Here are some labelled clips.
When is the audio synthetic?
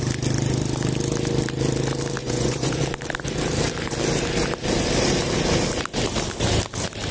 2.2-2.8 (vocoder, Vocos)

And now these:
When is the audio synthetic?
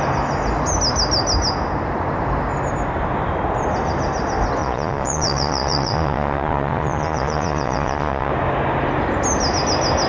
4.6-8.3 (vocoder, Vocos)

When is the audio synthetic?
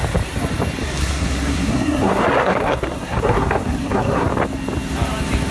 1.0-4.3 (codec, SNAC)